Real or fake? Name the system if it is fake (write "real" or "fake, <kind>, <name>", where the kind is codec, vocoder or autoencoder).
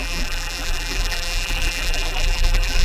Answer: fake, vocoder, BigVGAN v2